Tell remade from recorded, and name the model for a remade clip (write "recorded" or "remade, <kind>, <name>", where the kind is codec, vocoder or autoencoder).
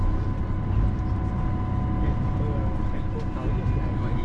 recorded